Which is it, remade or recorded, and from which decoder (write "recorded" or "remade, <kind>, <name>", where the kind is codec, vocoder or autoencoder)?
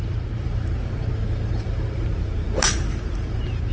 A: remade, vocoder, BigVGAN v2